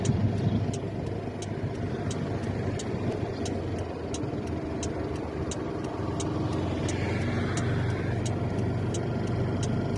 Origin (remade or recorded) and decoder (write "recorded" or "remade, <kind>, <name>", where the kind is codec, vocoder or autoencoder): recorded